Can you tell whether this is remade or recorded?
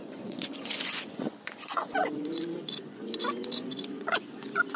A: remade